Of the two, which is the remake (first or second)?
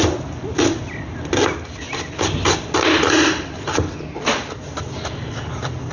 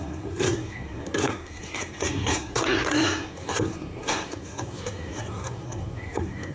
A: second